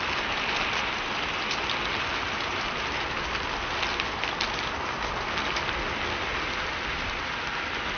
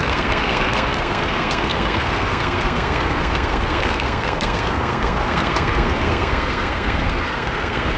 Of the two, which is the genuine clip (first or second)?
first